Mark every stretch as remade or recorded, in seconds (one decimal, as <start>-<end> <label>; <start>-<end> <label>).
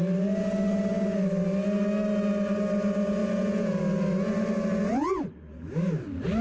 0.0-3.2 recorded; 3.2-3.8 remade; 3.8-6.4 recorded